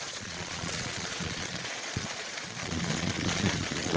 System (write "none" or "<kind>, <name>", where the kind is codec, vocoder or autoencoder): vocoder, Vocos